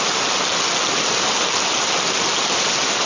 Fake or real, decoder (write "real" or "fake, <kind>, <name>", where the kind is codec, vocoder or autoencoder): real